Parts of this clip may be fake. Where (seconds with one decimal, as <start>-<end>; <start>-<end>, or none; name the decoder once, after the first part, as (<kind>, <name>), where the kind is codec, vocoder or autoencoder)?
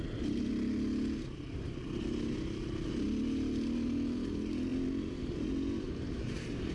none